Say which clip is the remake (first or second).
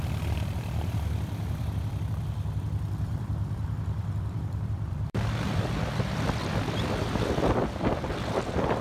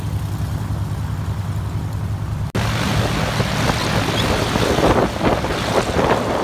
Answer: first